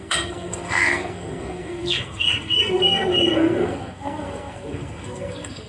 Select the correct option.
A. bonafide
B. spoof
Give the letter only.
B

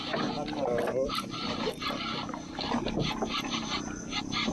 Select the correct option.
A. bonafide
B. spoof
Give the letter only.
A